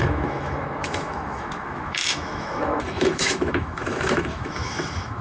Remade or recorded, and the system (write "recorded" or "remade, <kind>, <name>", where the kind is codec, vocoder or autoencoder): remade, autoencoder, DAC-VAE